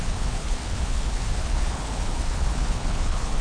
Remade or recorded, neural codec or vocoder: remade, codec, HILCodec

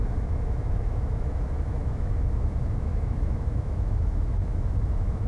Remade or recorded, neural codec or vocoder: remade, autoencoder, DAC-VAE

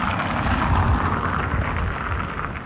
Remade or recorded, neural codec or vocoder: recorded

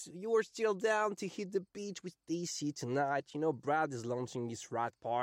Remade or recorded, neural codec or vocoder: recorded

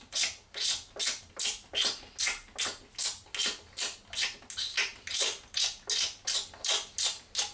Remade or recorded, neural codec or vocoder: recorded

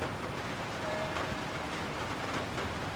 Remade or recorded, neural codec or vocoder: remade, vocoder, BigVGAN v2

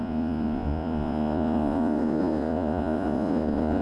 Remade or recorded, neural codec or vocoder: remade, vocoder, Vocos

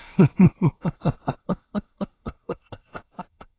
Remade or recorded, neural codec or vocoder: remade, codec, SNAC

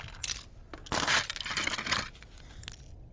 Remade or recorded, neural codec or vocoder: recorded